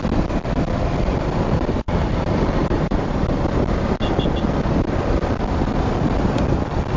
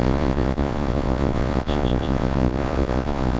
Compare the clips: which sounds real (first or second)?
first